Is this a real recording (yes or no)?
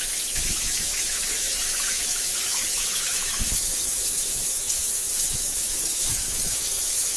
no